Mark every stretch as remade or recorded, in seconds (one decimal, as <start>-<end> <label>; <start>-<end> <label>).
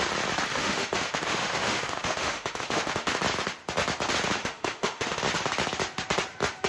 0.0-0.5 recorded; 0.5-3.2 remade; 3.2-4.4 recorded; 4.4-5.2 remade; 5.2-6.7 recorded